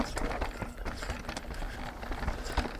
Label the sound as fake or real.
real